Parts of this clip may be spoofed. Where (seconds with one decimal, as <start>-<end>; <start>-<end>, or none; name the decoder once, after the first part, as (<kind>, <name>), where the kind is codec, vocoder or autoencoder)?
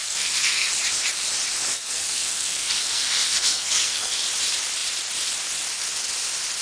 0.0-0.7 (codec, SNAC); 1.7-4.2